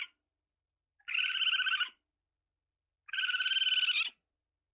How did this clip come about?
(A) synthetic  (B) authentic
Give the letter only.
B